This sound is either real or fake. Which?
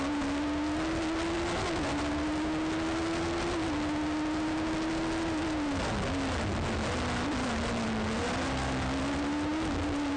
real